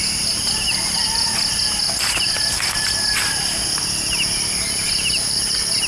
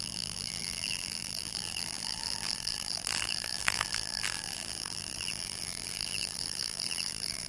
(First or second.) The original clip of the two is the first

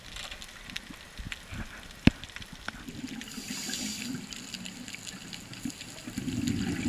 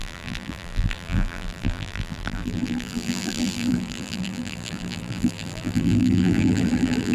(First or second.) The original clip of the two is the first